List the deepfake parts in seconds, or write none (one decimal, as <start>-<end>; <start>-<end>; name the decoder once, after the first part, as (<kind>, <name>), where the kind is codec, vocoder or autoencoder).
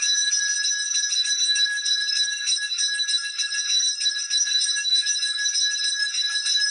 0.0-6.7 (codec, DAC)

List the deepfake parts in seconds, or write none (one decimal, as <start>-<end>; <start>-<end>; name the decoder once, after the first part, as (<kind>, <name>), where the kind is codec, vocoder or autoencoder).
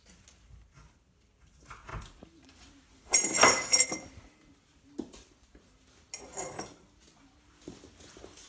none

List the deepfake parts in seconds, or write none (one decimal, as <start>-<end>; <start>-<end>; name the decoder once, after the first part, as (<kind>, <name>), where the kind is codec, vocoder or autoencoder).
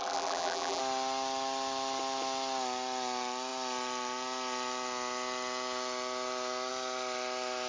0.0-0.8 (vocoder, BigVGAN v2)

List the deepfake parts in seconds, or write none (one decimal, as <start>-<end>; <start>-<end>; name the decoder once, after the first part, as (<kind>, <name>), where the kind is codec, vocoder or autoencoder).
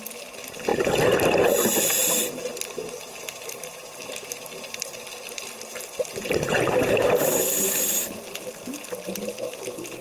none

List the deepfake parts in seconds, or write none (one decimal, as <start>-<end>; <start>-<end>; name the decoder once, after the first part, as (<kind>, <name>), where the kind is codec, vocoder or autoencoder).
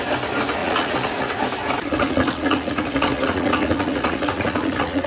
0.6-1.3 (vocoder, Vocos); 1.9-5.1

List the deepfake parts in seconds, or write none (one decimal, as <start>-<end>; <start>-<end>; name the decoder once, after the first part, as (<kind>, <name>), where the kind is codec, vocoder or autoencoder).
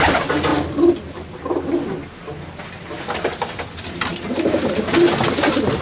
none